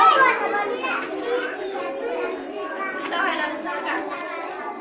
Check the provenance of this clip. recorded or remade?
recorded